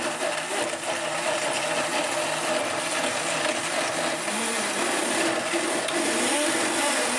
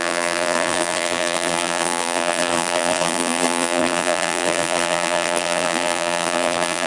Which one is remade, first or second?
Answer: second